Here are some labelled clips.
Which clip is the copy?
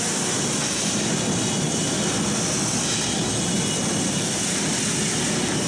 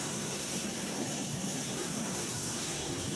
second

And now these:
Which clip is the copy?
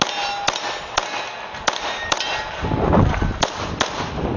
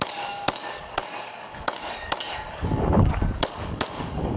second